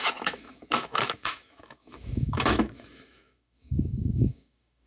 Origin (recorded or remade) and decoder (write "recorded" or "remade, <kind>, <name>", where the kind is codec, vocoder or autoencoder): remade, autoencoder, DAC-VAE